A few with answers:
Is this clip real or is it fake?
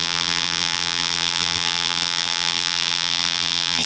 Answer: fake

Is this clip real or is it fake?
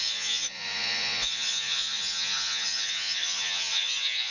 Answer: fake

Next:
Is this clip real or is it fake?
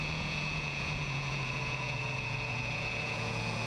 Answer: fake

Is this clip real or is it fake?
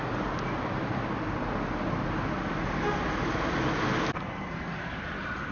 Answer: real